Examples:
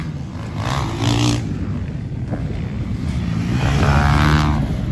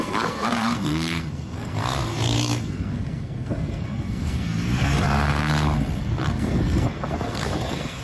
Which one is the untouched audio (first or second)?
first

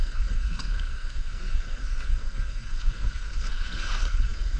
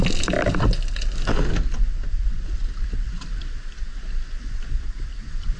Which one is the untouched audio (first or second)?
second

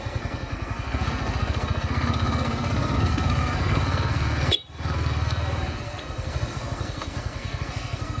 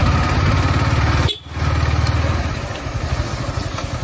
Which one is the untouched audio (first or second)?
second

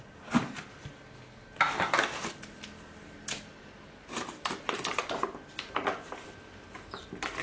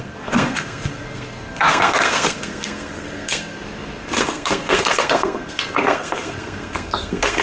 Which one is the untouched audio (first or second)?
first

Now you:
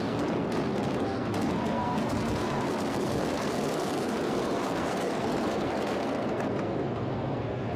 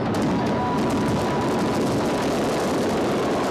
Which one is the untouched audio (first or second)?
second